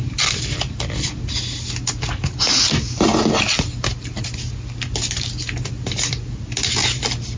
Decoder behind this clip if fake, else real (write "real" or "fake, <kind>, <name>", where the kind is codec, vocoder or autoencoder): real